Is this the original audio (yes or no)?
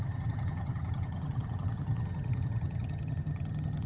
no